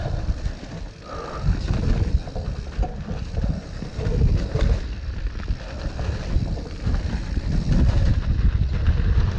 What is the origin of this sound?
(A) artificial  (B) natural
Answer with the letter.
B